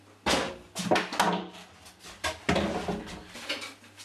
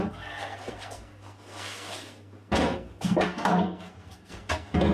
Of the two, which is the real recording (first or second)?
first